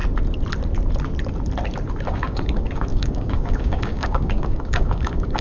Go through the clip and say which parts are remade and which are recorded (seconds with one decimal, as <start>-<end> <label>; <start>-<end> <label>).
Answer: 0.0-2.1 recorded; 2.1-5.4 remade